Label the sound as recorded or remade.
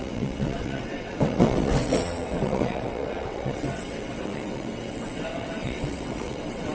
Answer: remade